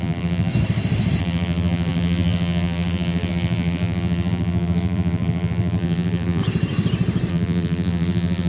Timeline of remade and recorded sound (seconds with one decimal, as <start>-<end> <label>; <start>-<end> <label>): 0.0-0.5 remade; 0.5-1.2 recorded; 1.2-6.4 remade; 6.4-7.3 recorded; 7.3-8.5 remade